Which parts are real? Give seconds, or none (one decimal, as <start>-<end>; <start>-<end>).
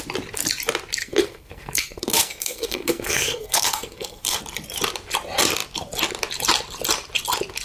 0.0-1.0; 4.4-7.6